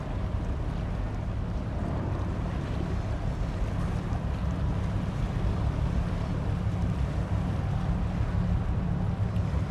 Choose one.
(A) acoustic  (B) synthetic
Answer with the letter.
A